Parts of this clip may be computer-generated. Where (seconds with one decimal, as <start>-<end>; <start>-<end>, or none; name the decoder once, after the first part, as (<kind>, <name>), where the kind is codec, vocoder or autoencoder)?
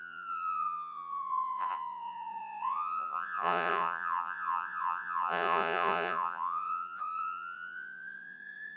0.0-8.8 (vocoder, Vocos)